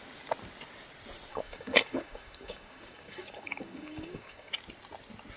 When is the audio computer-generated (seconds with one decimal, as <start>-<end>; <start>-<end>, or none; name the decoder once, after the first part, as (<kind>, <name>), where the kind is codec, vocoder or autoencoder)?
1.3-4.5 (codec, DAC)